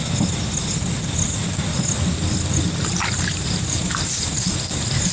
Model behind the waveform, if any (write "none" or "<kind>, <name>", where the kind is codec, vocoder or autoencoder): none